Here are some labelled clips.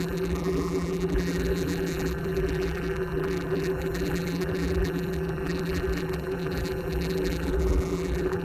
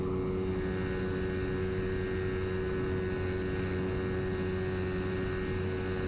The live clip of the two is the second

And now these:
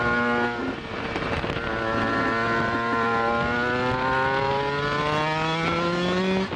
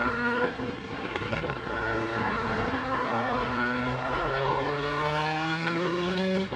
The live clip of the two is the first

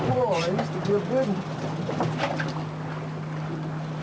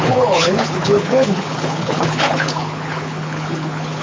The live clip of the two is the first